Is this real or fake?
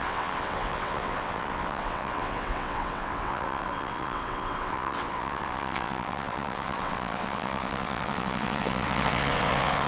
fake